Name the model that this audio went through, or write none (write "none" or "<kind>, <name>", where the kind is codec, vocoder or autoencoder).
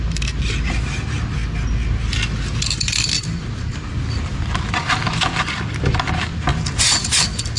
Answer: none